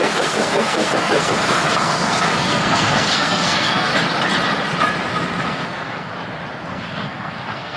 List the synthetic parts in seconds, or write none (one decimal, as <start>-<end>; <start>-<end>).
0.0-3.9; 5.4-6.1; 6.7-7.8

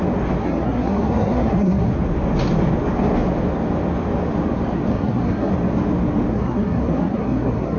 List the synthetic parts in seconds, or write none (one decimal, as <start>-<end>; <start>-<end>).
0.4-1.9; 4.9-5.5; 6.3-7.8

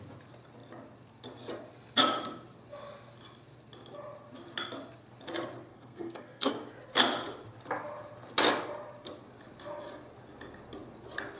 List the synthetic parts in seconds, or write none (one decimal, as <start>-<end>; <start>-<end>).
5.7-6.5

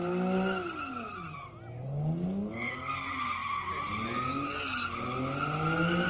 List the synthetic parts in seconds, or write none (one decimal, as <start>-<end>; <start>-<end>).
none